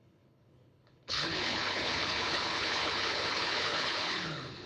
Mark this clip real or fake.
fake